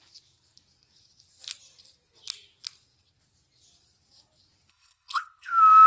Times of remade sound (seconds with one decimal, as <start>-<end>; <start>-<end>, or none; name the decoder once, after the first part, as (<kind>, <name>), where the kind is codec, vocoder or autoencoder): 4.7-5.5 (codec, HILCodec)